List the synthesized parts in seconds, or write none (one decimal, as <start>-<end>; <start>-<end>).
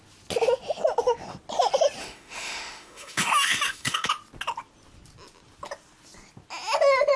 2.0-4.1